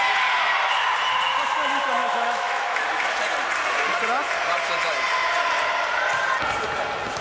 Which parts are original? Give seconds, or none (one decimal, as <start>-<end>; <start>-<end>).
0.0-2.0; 2.8-7.2

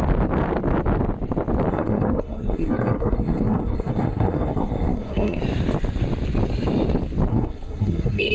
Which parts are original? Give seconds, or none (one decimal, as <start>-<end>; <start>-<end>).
0.0-1.7; 5.4-7.3

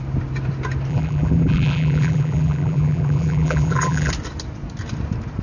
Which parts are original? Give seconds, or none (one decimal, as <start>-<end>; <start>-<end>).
0.0-0.9; 4.1-5.4

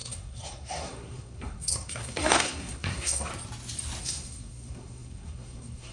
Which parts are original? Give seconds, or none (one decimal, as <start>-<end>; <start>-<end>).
3.3-4.0

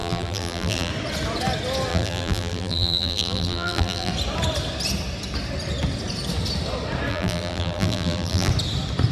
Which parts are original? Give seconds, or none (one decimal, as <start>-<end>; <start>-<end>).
0.9-1.9; 4.1-7.1; 8.5-9.1